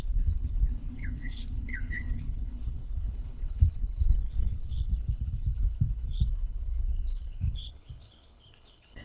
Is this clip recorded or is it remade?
remade